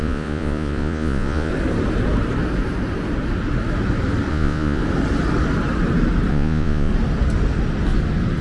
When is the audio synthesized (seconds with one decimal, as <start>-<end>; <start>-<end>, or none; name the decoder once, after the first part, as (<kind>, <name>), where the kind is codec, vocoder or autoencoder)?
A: 0.0-1.5 (vocoder, Vocos); 4.3-4.8; 6.3-6.9